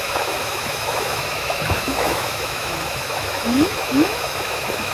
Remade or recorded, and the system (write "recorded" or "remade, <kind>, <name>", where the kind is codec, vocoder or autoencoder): remade, autoencoder, DAC-VAE